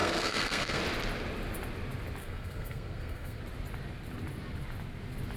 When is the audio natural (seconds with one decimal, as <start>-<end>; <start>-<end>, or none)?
0.8-2.2; 3.4-5.4